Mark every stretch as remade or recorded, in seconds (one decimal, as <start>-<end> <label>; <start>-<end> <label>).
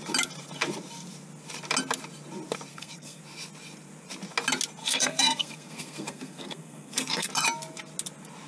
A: 0.0-2.7 recorded; 2.7-3.2 remade; 3.2-4.8 recorded; 4.8-7.3 remade; 7.3-8.5 recorded